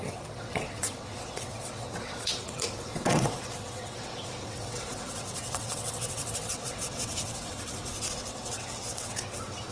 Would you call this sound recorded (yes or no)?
no